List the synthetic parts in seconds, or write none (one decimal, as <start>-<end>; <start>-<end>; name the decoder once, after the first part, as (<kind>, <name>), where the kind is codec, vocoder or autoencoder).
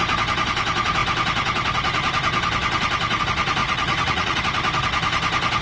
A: 3.6-4.4 (vocoder, Vocos)